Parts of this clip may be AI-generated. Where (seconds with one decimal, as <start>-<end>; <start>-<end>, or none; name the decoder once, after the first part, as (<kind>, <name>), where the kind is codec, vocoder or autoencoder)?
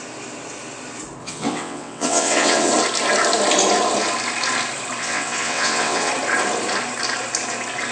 1.2-2.7 (vocoder, WaveNeXt); 5.0-6.1